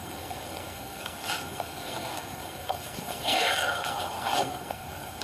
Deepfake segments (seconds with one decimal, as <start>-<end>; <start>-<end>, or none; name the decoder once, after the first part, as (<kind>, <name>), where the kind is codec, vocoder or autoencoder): 0.0-5.2 (codec, SNAC)

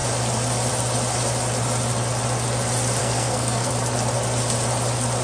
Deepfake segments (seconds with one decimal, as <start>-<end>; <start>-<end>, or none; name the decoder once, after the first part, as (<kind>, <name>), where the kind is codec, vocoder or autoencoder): 3.0-3.7 (codec, SNAC)